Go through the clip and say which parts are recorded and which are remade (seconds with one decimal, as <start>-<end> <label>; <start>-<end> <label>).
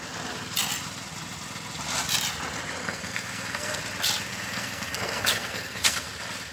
0.0-2.8 recorded; 2.8-3.8 remade; 3.8-4.3 recorded; 4.3-6.1 remade; 6.1-6.5 recorded